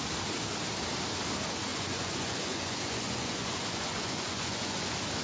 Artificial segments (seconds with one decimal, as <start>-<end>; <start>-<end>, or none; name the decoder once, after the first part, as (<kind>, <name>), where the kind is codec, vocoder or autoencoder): 1.7-4.8 (vocoder, Vocos)